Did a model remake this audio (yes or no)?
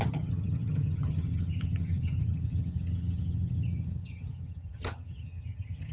yes